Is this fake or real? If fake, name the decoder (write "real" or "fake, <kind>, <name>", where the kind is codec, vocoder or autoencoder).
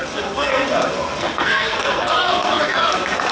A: fake, codec, SNAC